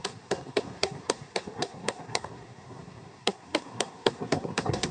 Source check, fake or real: fake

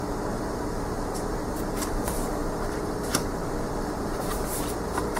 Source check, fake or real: fake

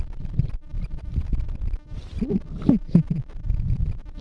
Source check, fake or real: real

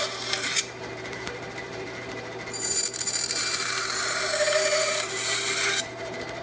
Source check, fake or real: fake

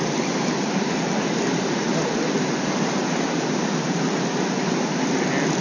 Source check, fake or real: real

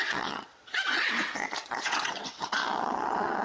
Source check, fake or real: fake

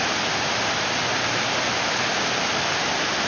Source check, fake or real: real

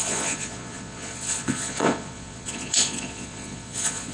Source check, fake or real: fake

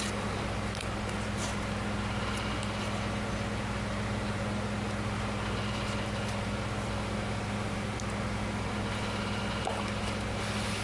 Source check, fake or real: real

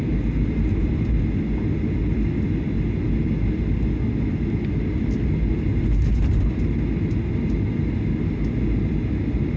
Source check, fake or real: real